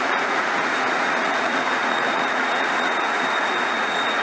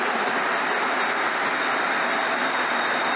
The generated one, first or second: first